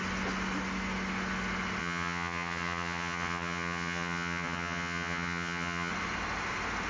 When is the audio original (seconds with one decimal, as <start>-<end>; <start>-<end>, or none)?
0.0-1.8; 5.9-6.9